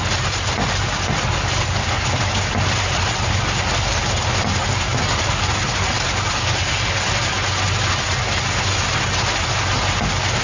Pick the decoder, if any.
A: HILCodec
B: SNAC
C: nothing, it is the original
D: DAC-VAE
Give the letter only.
C